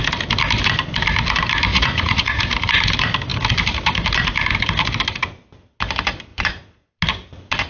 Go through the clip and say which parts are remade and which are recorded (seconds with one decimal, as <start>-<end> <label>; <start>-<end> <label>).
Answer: 0.0-1.7 recorded; 1.7-2.4 remade; 2.4-6.3 recorded; 6.3-6.9 remade; 6.9-7.7 recorded